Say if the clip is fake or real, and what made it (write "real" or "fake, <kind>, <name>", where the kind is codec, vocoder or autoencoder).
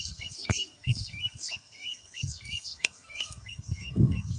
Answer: fake, codec, SNAC